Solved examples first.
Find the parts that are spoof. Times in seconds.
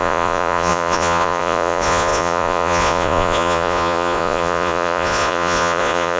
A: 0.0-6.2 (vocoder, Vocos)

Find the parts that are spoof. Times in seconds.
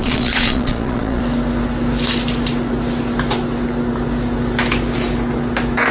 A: 0.0-1.2 (vocoder, Vocos)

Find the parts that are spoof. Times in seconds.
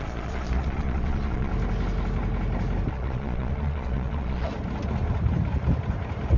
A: 0.0-1.5 (vocoder, Vocos); 2.9-4.5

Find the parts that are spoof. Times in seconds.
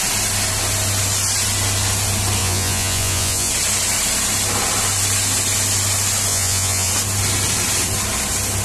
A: 2.4-3.5 (vocoder, Vocos); 6.3-6.9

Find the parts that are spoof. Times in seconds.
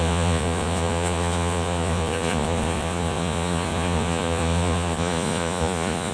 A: 0.0-6.1 (vocoder, Vocos)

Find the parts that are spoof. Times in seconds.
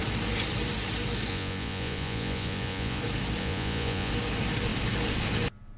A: 1.3-3.0 (vocoder, Vocos); 3.4-4.1